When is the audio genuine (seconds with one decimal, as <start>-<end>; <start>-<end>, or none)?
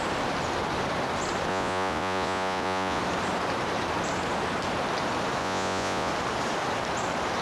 0.0-1.5; 3.0-5.4; 6.1-7.4